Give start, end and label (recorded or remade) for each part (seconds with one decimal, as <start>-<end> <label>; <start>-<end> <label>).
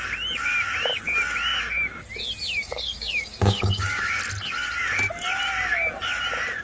0.0-2.6 recorded; 2.6-4.2 remade; 4.2-6.6 recorded